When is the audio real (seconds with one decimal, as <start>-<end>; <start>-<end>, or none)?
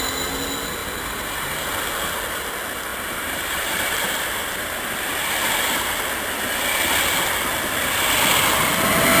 0.0-0.8; 1.7-2.9; 5.9-9.2